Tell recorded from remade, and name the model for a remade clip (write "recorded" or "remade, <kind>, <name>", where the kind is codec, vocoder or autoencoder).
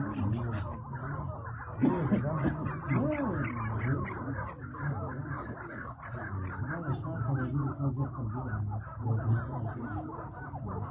recorded